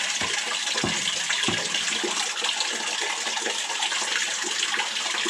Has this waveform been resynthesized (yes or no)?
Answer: no